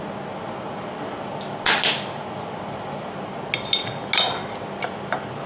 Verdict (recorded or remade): recorded